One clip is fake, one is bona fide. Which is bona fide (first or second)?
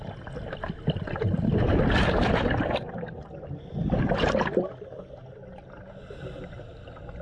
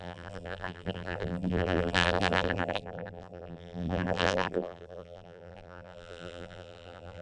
first